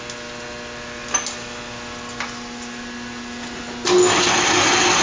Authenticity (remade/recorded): recorded